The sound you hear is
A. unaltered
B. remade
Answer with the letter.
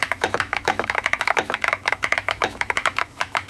B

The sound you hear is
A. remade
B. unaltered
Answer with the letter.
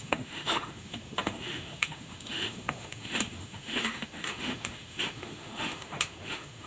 A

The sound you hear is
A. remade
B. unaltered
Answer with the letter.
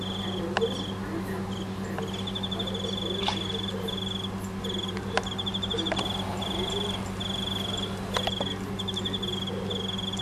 B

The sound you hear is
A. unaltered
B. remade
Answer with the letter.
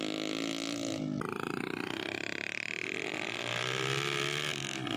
A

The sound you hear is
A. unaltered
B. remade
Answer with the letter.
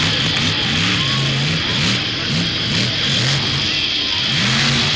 A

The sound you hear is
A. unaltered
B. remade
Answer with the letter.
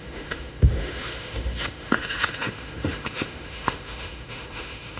B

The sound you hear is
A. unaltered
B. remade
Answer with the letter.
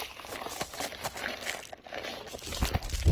A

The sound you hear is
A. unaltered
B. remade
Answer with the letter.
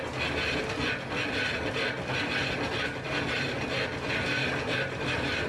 A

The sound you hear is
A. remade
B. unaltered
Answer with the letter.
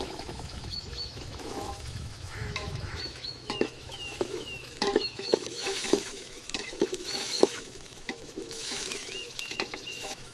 A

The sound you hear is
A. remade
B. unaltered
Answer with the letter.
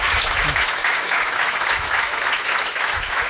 A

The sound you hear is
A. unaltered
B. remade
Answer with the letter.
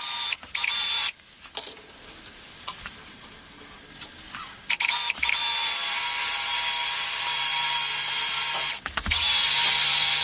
A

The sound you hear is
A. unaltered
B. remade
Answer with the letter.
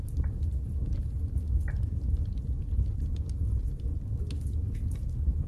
A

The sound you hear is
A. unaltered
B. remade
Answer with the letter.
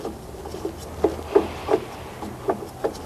A